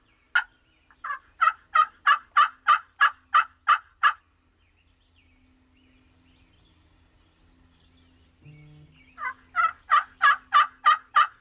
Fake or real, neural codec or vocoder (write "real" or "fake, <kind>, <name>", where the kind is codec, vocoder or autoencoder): real